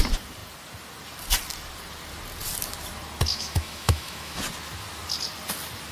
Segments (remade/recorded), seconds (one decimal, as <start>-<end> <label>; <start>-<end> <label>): 0.0-3.3 recorded; 3.3-4.4 remade; 4.4-5.9 recorded